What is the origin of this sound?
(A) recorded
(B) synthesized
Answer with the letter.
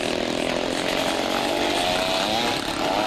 A